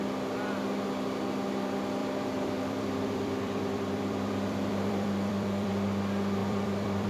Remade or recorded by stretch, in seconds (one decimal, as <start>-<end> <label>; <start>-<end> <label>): 0.0-2.0 recorded; 2.0-5.7 remade; 5.7-6.4 recorded; 6.4-7.1 remade

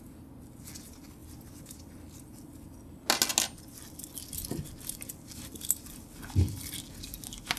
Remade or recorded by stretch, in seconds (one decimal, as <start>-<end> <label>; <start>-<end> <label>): 0.0-1.2 recorded; 1.2-2.0 remade; 2.0-7.6 recorded

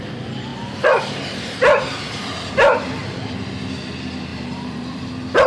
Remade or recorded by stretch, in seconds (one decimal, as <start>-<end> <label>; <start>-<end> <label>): 0.0-4.3 recorded; 4.3-5.1 remade; 5.1-5.5 recorded